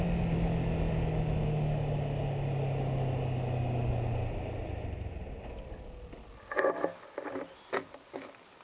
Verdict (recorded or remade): recorded